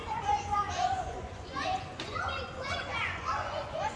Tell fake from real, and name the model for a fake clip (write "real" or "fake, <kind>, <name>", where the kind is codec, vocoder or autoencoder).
fake, vocoder, Vocos